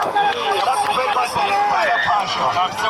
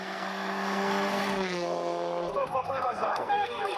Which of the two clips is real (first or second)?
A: first